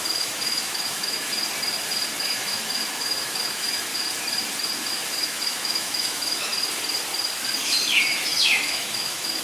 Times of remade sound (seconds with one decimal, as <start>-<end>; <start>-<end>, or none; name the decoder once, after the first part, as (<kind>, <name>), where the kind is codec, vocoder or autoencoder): 0.0-1.3 (autoencoder, DAC-VAE); 2.2-3.9; 4.9-6.5; 8.0-9.4